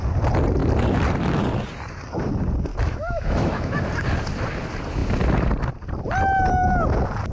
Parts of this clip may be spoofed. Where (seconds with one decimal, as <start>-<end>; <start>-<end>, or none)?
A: 2.7-3.8